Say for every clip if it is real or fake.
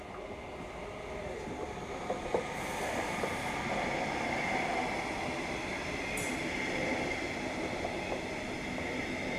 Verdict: real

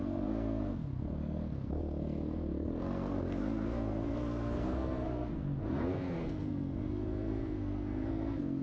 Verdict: fake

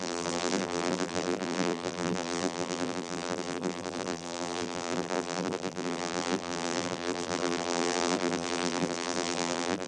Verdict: fake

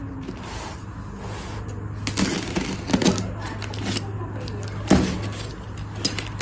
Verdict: real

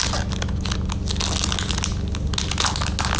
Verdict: real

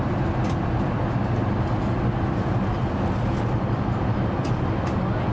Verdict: real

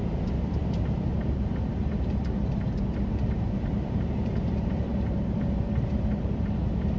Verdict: fake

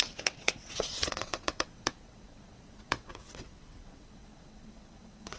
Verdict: fake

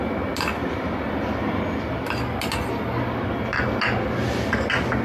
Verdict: real